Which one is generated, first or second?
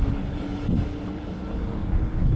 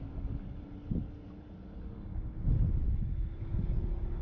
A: first